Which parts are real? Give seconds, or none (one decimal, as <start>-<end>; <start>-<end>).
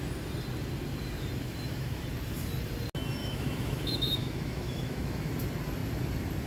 0.0-1.5; 2.0-3.2; 5.3-6.5